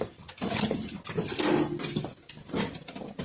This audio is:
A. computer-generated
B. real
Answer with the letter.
B